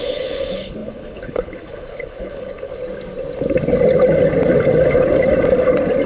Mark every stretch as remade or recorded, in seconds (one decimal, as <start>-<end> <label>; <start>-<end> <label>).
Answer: 0.0-2.7 remade; 2.7-6.1 recorded